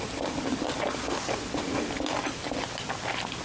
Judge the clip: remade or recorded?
recorded